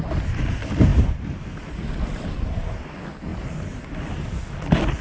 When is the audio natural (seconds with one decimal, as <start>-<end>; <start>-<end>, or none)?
0.0-5.0